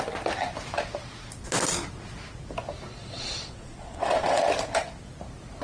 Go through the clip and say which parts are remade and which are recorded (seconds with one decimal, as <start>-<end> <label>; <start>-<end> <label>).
0.0-3.0 recorded; 3.0-4.4 remade; 4.4-5.6 recorded